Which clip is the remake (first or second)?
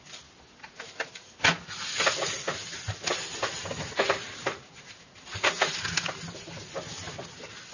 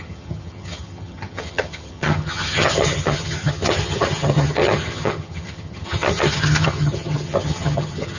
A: second